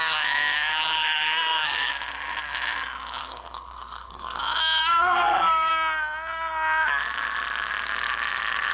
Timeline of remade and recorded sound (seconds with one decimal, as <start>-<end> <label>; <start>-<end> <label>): 0.0-0.7 recorded; 0.7-1.9 remade; 1.9-3.2 recorded; 3.2-4.4 remade; 4.4-4.9 recorded; 4.9-5.7 remade; 5.7-8.7 recorded